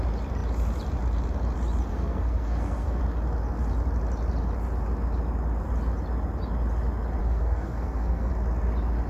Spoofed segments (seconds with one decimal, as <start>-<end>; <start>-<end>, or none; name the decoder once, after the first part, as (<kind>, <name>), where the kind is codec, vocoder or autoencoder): 1.9-3.0 (codec, SNAC); 7.2-8.3

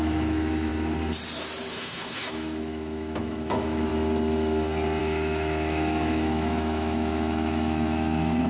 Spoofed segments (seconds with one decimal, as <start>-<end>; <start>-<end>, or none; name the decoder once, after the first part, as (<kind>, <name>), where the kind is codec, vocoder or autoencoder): 0.0-0.7 (autoencoder, DAC-VAE); 1.7-3.9; 5.0-8.5

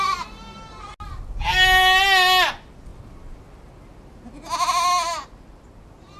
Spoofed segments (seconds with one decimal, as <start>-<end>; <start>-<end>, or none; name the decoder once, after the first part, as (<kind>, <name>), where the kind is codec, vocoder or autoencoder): none

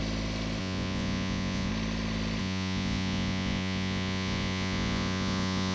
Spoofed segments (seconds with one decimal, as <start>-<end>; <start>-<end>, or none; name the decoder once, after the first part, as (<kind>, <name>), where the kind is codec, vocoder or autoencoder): 0.6-1.7 (vocoder, Vocos); 2.4-5.7

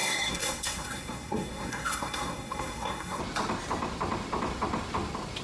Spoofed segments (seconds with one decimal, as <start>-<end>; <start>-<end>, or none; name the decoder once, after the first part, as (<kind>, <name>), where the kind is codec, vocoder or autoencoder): 0.0-3.2 (codec, SNAC)

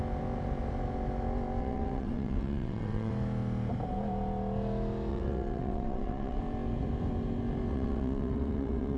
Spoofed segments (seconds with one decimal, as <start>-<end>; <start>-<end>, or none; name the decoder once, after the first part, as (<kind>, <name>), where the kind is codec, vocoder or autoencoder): 1.6-3.1 (vocoder, WaveNeXt); 5.1-6.4; 7.7-9.0

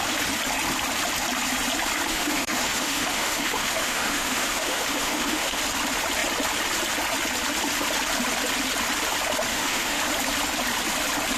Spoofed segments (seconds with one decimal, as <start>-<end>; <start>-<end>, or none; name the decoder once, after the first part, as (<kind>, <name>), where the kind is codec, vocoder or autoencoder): 2.1-5.6 (autoencoder, DAC-VAE); 9.5-10.0

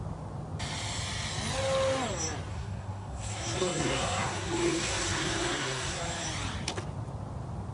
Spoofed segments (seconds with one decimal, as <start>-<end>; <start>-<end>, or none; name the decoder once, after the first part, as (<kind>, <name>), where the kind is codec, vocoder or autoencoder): 2.5-6.0 (codec, SNAC)